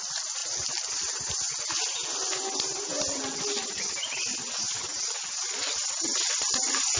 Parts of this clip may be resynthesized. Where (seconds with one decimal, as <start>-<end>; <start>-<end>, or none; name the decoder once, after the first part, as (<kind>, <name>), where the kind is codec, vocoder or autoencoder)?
none